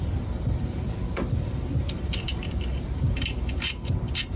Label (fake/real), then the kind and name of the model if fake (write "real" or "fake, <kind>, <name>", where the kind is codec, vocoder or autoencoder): fake, vocoder, BigVGAN v2